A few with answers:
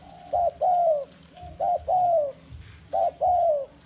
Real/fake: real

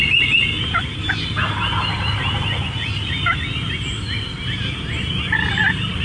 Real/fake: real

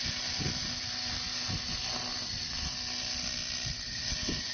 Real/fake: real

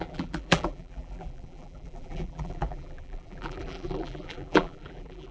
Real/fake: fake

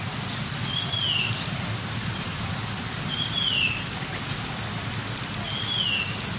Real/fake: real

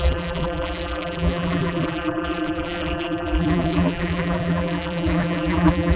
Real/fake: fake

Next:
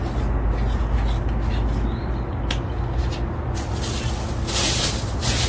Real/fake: real